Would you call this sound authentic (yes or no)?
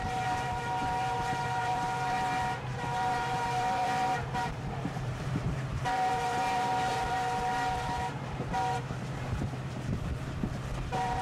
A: no